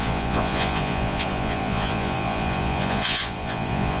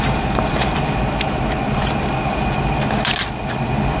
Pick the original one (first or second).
second